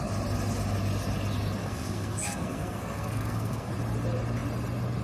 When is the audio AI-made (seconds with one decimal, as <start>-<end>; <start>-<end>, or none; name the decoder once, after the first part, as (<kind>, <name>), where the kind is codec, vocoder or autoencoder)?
1.6-3.7 (codec, SNAC)